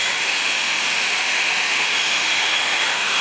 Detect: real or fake fake